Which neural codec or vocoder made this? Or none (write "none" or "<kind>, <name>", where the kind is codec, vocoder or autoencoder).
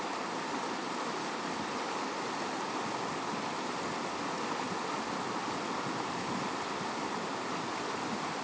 none